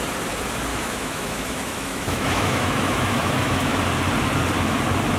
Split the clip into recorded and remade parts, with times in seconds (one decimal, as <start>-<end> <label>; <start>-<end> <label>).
0.0-0.7 recorded; 0.7-3.8 remade; 3.8-5.2 recorded